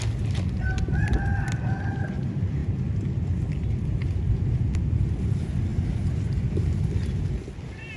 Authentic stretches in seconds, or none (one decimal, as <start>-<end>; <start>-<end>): 0.0-8.0

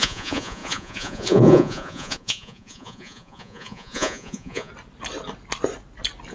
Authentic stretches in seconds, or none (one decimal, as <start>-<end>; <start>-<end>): 4.7-6.3

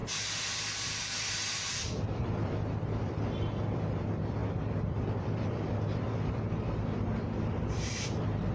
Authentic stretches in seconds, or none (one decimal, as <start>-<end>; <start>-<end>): 0.0-1.7

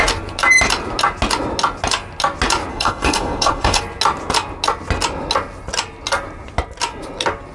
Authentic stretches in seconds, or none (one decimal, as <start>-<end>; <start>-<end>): 0.0-2.7; 3.8-7.5

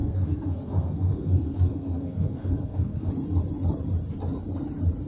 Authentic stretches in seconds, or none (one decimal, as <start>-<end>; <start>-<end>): 3.1-5.1

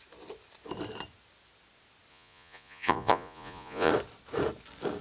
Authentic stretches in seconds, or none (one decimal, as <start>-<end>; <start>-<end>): 0.0-2.1; 3.9-5.0